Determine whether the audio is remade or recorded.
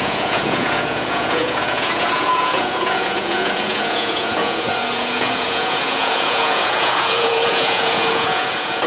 remade